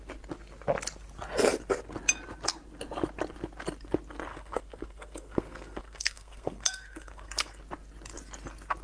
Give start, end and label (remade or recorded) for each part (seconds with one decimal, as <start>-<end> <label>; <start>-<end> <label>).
0.0-4.3 recorded; 4.3-7.6 remade; 7.6-8.8 recorded